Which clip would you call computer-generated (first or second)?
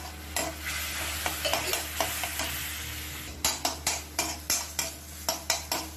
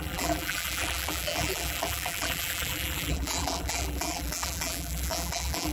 second